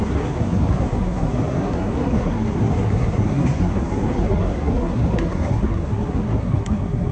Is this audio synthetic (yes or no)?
yes